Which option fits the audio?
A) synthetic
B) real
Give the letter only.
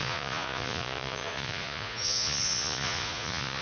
A